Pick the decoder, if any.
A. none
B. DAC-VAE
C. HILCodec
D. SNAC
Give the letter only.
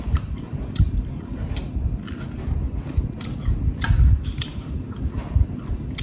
A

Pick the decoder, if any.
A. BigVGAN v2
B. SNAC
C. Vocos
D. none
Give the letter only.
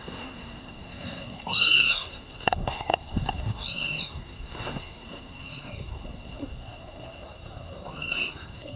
B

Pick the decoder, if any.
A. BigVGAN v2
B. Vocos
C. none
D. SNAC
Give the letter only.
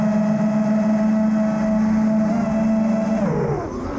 C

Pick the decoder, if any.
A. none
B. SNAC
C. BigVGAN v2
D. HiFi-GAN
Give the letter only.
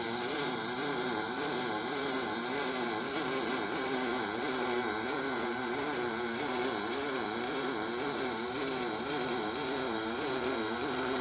C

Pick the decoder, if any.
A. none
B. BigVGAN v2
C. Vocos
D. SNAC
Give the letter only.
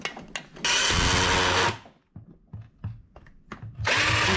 A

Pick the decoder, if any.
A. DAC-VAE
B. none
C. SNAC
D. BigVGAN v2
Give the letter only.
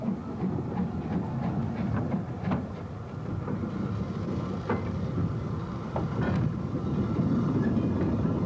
B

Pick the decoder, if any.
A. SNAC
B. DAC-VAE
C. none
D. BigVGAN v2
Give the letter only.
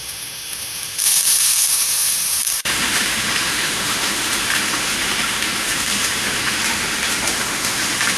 B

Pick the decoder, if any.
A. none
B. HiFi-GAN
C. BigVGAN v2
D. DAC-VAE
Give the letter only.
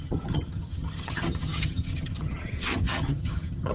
B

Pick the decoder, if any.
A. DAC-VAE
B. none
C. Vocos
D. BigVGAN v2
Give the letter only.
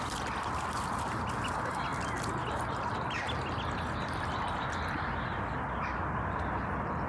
B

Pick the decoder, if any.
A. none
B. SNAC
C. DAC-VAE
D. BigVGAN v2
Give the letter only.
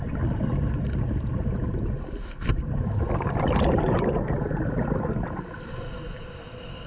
D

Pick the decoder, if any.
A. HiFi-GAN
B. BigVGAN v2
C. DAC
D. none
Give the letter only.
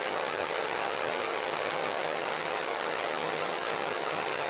A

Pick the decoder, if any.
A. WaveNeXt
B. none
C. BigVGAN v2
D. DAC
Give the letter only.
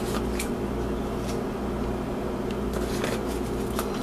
B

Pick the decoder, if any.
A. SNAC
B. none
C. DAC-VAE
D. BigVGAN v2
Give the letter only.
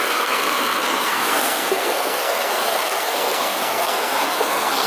A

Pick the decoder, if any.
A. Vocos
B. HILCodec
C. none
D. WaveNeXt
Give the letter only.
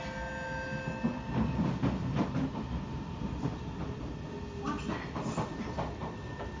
C